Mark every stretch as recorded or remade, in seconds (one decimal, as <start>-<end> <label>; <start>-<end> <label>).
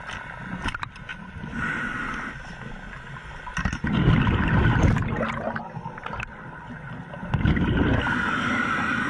0.0-9.1 recorded